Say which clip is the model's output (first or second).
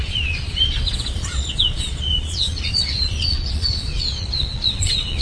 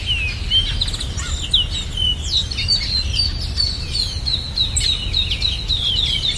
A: first